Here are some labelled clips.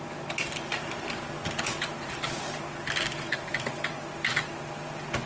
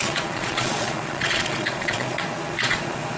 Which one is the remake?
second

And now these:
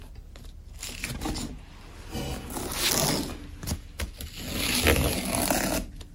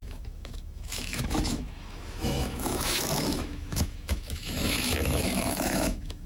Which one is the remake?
second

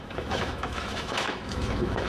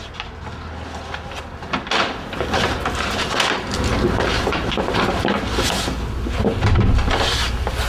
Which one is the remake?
first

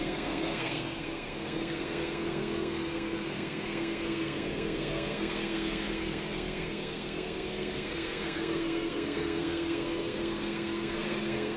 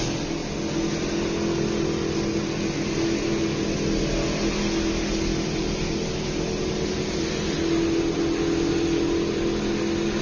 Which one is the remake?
first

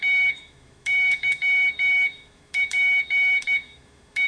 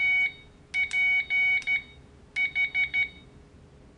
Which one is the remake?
first